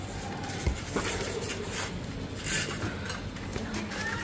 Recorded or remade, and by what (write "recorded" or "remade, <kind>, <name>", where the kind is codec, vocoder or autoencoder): recorded